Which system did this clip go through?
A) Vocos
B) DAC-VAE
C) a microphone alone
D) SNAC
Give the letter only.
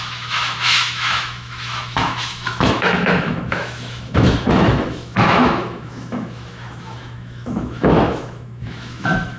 B